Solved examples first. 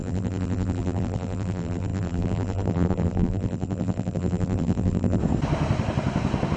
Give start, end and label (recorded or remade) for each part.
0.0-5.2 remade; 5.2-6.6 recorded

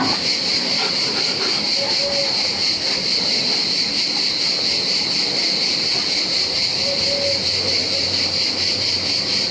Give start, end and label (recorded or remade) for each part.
0.0-9.5 recorded

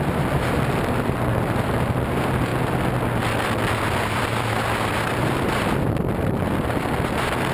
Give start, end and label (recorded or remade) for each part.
0.0-2.5 remade; 2.5-3.8 recorded; 3.8-7.5 remade

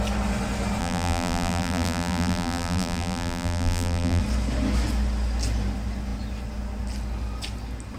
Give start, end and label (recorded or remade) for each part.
0.0-0.8 recorded; 0.8-4.2 remade; 4.2-8.0 recorded

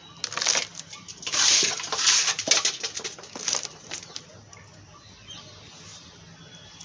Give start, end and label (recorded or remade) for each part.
0.0-0.7 recorded; 0.7-4.4 remade; 4.4-6.8 recorded

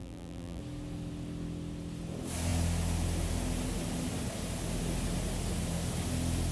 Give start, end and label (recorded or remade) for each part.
0.0-0.6 remade; 0.6-6.5 recorded

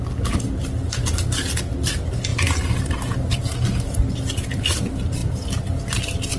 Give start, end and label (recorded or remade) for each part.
0.0-2.3 recorded; 2.3-4.0 remade; 4.0-6.4 recorded